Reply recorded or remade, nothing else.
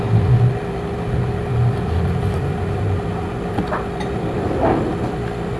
recorded